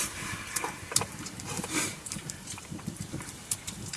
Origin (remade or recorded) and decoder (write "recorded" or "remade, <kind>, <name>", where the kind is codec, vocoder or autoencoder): remade, vocoder, BigVGAN v2